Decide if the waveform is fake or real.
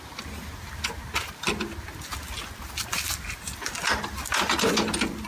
real